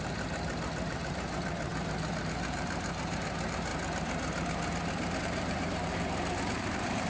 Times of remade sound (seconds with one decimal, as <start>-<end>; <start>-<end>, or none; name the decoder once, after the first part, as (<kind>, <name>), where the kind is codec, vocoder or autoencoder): 0.0-1.7 (vocoder, BigVGAN v2); 2.2-3.7; 5.2-7.1